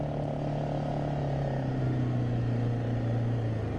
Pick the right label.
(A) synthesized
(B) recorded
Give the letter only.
B